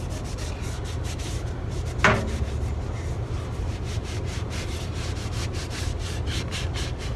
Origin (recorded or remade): recorded